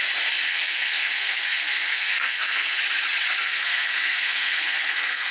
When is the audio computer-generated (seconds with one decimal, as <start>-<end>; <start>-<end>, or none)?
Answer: 0.5-2.8; 3.4-5.3